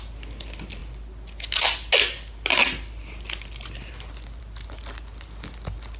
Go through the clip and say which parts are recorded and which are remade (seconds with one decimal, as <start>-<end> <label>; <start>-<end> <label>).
0.0-6.0 recorded